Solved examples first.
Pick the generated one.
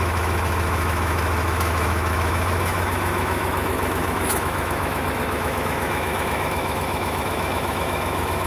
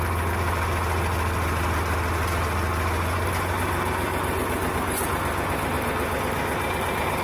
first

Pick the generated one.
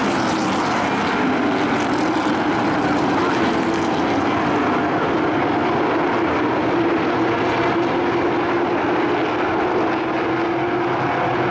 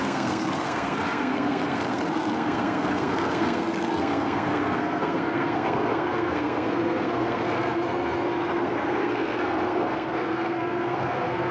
second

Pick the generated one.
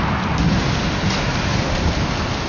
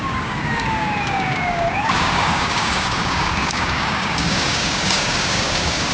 second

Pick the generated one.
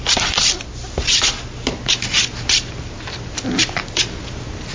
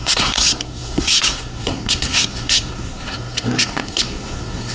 second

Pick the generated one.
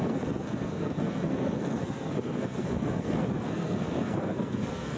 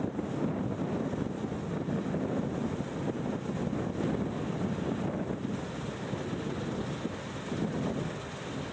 first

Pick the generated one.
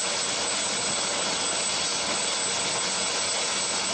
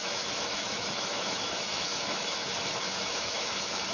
second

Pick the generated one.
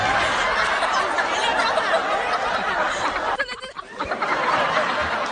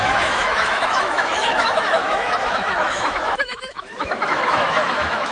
second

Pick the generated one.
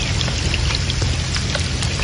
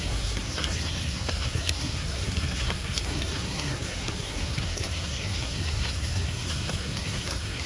second